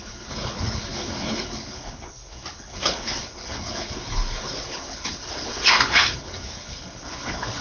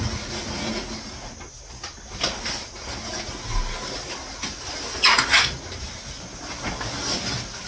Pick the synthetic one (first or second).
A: first